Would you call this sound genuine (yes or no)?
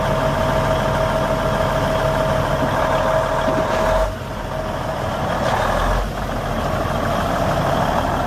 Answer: yes